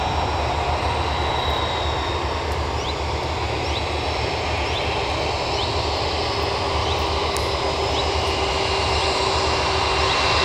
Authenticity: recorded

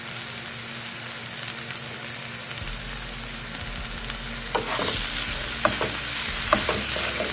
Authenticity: recorded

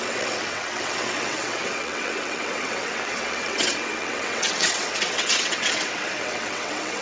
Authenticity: remade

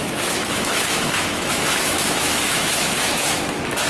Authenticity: remade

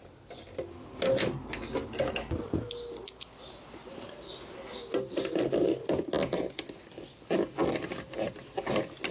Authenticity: recorded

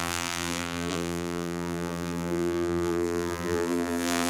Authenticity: remade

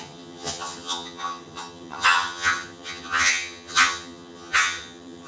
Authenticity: remade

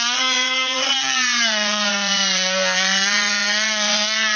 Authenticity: remade